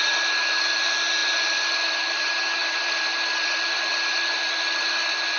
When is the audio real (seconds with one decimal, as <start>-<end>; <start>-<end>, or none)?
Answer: 0.0-1.2; 2.2-2.6; 4.9-5.4